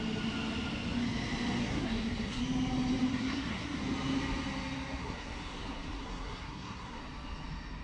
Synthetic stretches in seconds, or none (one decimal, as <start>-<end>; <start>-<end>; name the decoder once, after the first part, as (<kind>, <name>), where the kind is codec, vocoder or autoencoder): 1.6-2.4 (codec, SNAC); 3.1-3.8; 5.0-7.0